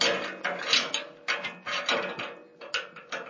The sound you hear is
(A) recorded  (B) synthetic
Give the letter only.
A